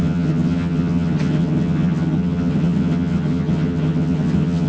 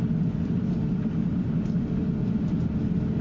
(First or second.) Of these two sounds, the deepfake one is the first